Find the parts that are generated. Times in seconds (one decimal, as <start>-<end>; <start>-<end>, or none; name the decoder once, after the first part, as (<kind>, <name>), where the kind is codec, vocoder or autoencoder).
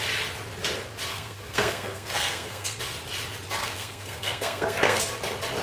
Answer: 1.1-2.8 (codec, SNAC); 3.6-5.0